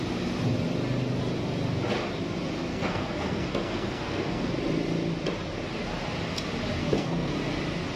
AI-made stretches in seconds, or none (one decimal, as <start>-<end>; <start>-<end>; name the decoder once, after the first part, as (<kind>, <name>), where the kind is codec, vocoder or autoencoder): 2.7-4.5 (codec, SNAC); 6.8-7.3